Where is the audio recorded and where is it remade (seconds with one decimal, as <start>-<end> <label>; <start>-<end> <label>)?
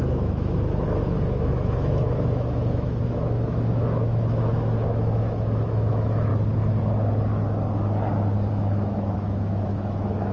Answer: 0.0-6.3 remade; 6.3-8.5 recorded; 8.5-10.3 remade